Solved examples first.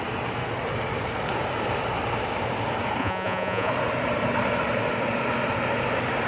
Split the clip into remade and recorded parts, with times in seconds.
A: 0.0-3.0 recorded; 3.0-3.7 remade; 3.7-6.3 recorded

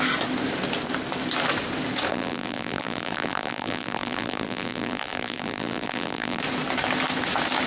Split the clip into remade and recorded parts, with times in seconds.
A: 0.0-2.1 recorded; 2.1-6.4 remade; 6.4-7.7 recorded

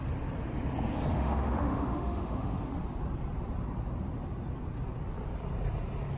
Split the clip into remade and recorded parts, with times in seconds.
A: 0.0-1.1 recorded; 1.1-2.7 remade; 2.7-6.2 recorded

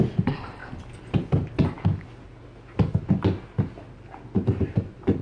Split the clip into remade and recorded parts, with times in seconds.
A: 0.0-5.2 recorded

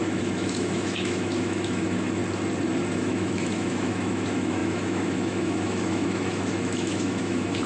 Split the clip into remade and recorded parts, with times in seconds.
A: 0.0-2.2 remade; 2.2-2.9 recorded; 2.9-7.7 remade

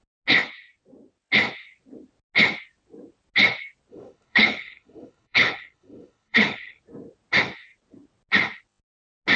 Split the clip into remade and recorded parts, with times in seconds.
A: 0.0-3.9 recorded; 3.9-6.8 remade; 6.8-9.4 recorded

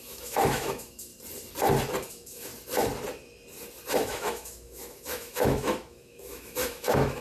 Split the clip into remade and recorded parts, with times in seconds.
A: 0.0-1.1 remade; 1.1-2.1 recorded; 2.1-2.5 remade; 2.5-3.9 recorded; 3.9-7.2 remade

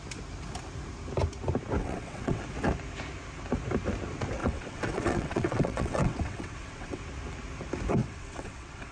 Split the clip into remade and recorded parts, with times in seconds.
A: 0.0-1.8 recorded; 1.8-2.4 remade; 2.4-4.4 recorded; 4.4-7.0 remade; 7.0-8.0 recorded; 8.0-8.9 remade